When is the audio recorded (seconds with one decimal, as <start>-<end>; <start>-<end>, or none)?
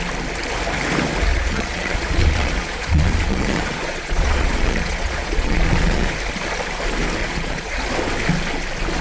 0.0-1.3; 6.1-7.2; 7.9-9.0